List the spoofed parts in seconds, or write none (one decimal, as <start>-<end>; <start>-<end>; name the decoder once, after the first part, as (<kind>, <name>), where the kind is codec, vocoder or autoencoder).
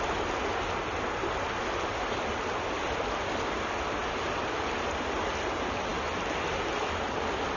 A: none